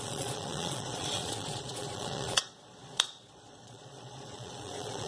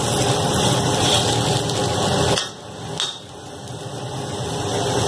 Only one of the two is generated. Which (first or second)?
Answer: first